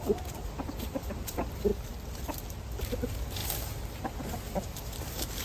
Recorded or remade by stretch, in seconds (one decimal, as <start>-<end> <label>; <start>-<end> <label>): 0.0-1.7 remade; 1.7-2.8 recorded; 2.8-3.4 remade; 3.4-4.0 recorded; 4.0-5.4 remade